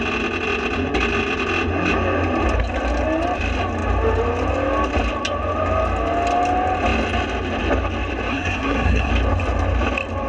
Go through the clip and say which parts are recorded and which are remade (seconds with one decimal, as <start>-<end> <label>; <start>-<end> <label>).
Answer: 0.0-8.3 recorded; 8.3-9.1 remade; 9.1-10.3 recorded